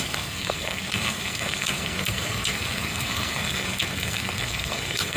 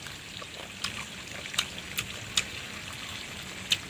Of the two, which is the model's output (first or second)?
first